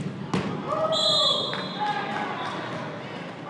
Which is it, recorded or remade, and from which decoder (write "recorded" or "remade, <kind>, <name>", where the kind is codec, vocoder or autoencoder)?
recorded